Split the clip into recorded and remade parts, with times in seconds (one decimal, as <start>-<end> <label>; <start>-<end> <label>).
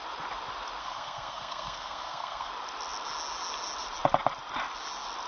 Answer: 0.0-0.8 recorded; 0.8-2.5 remade; 2.5-5.3 recorded